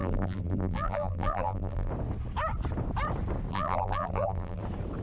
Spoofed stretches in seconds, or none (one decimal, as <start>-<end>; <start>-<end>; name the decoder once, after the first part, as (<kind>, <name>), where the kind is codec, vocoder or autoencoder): 0.0-1.9 (vocoder, BigVGAN v2); 3.5-4.6